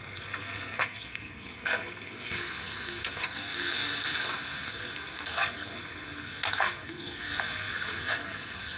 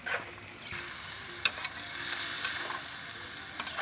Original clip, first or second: second